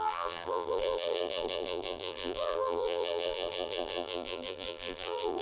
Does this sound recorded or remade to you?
remade